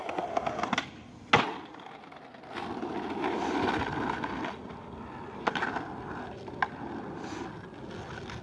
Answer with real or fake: real